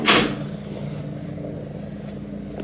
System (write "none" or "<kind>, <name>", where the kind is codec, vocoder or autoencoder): none